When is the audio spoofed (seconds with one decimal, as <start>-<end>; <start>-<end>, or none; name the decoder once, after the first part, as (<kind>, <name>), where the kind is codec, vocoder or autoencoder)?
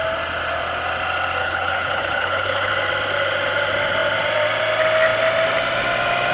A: 1.4-2.7 (codec, HILCodec)